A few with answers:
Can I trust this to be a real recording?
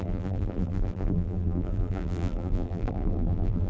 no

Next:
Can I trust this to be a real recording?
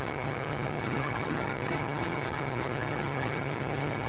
no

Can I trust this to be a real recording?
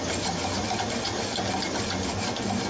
yes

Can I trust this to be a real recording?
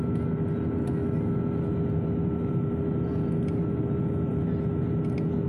yes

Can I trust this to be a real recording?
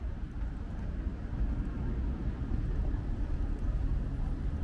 yes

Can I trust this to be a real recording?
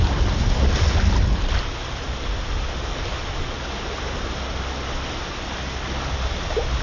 yes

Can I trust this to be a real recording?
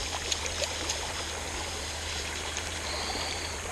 yes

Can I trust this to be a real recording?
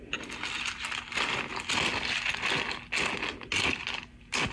yes